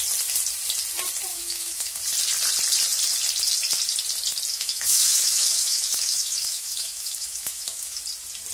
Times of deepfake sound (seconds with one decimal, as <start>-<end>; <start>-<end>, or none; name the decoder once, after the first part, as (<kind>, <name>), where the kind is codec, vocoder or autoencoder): 1.3-2.0 (autoencoder, DAC-VAE); 4.5-8.0